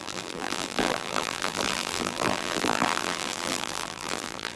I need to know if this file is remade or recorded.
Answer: remade